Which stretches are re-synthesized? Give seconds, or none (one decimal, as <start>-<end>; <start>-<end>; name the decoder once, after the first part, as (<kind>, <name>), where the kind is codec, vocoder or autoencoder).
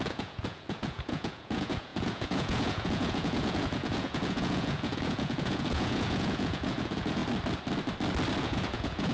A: 0.0-7.2 (vocoder, Vocos); 8.4-9.1